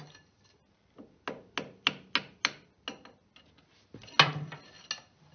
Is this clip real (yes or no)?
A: yes